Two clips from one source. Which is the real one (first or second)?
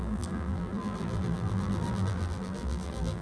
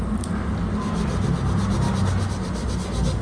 second